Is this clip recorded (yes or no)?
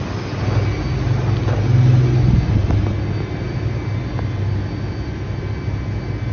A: yes